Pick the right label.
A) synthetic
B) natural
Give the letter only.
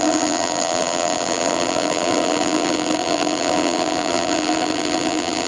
A